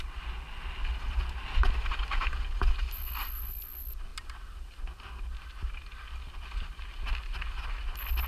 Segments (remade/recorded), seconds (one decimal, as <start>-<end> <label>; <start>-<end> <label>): 0.0-8.3 recorded